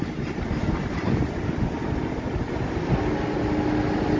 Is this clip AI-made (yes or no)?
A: no